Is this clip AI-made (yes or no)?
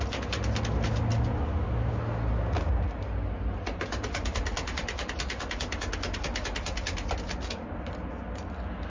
no